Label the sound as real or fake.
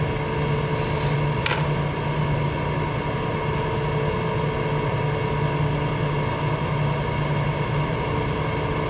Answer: real